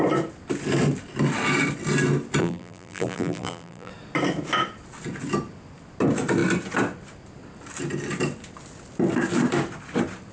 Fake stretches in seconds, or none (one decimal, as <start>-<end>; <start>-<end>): 2.4-3.9